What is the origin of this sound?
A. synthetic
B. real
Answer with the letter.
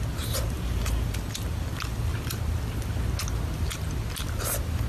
B